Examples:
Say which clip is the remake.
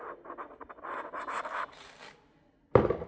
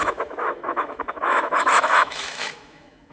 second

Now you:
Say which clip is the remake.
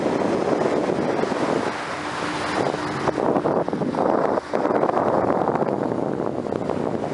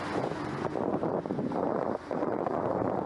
second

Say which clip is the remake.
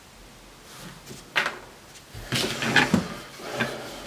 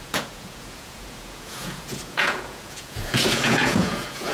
second